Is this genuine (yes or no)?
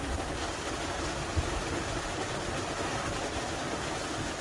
yes